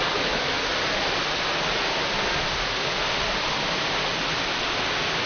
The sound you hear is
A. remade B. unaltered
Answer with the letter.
B